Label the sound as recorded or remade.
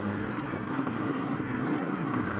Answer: remade